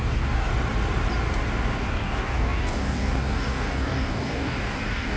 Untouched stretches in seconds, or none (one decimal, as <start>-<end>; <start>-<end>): 0.5-1.9